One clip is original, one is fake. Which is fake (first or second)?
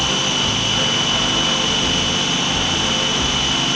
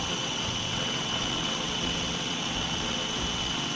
second